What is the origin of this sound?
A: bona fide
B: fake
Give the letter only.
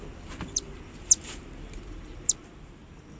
B